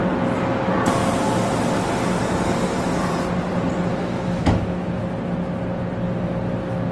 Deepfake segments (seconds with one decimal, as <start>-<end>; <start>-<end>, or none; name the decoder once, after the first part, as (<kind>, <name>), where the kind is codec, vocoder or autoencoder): 3.9-5.0 (autoencoder, DAC-VAE)